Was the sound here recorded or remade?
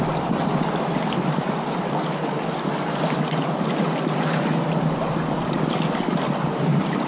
recorded